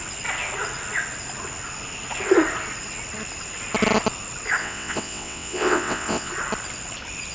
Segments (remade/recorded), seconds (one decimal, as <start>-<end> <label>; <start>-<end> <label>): 0.0-4.6 recorded; 4.6-6.3 remade; 6.3-7.3 recorded